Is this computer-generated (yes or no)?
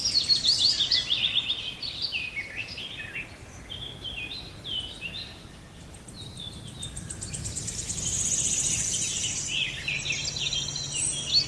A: no